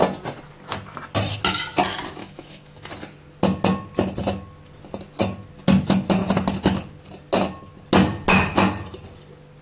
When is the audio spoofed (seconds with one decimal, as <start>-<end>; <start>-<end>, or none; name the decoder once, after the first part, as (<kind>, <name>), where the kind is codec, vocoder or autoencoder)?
2.2-2.9 (autoencoder, DAC-VAE)